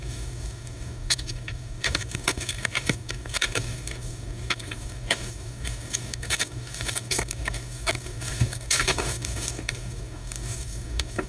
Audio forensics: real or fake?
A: fake